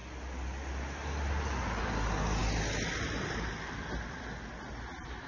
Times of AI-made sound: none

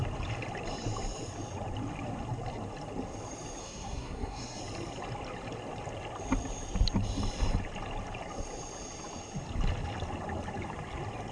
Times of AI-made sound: 3.6-4.6

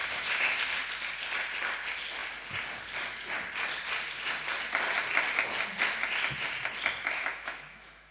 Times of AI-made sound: 0.0-0.6; 7.3-8.1

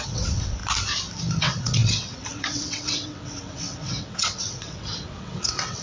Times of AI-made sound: 0.0-0.6; 1.4-5.8

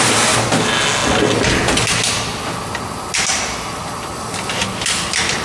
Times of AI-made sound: none

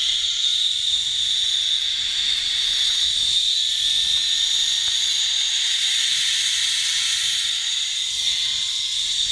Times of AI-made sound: 0.0-0.5; 1.8-3.0; 5.2-9.3